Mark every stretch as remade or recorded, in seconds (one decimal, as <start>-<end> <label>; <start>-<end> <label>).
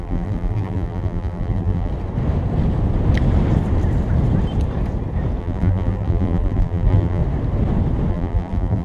0.0-1.9 remade; 1.9-5.4 recorded; 5.4-7.2 remade; 7.2-8.1 recorded; 8.1-8.8 remade